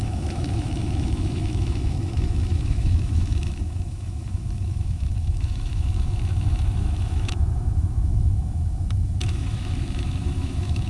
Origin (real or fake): fake